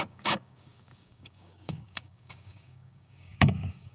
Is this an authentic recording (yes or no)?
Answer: no